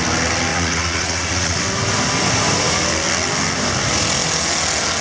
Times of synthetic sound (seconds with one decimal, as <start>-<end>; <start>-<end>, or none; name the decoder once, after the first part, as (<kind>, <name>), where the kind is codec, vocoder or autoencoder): 0.5-1.6 (vocoder, Vocos)